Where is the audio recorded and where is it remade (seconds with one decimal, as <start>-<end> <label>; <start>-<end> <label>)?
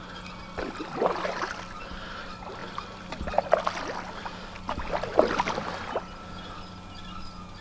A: 0.0-7.6 recorded